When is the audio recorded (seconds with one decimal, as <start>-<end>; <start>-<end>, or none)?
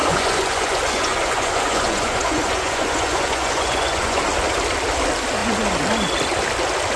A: 4.2-7.0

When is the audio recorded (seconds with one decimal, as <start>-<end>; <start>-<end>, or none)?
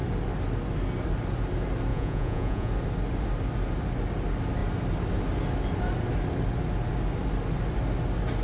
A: 0.0-1.9; 2.7-8.4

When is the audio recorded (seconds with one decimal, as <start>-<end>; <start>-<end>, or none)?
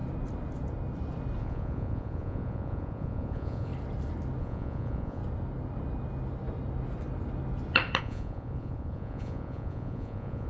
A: 0.0-1.4; 3.7-4.4; 5.2-8.0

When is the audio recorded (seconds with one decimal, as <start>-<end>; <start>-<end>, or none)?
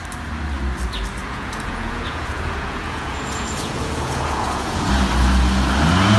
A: 0.0-1.2; 4.9-6.2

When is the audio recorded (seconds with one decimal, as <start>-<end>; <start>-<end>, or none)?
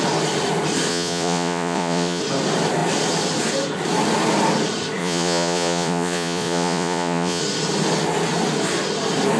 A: 0.0-0.9; 2.2-5.0; 7.4-9.4